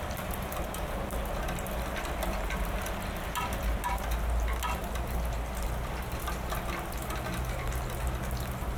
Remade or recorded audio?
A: recorded